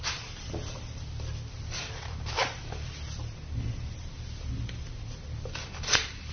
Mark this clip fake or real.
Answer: fake